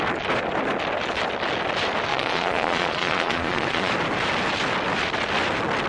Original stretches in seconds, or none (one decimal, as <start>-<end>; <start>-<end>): 0.0-2.1; 3.9-5.9